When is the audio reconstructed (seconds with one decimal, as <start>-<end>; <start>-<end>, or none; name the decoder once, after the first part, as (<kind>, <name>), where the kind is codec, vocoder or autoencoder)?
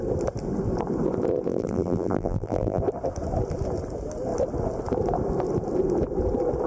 1.5-2.8 (vocoder, BigVGAN v2)